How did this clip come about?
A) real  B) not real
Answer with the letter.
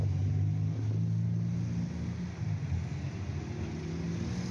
A